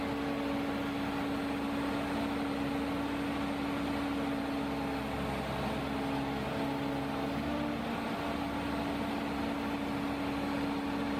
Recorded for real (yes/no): yes